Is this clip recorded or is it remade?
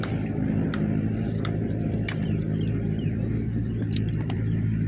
remade